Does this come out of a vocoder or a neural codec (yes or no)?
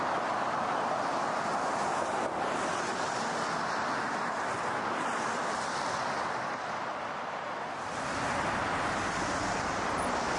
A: no